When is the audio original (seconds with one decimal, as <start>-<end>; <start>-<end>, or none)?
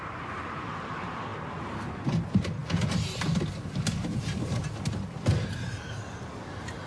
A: 0.0-6.9